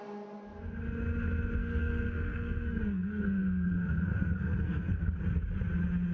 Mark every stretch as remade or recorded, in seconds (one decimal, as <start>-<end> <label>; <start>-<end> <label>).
0.0-1.6 recorded; 1.6-5.2 remade; 5.2-6.1 recorded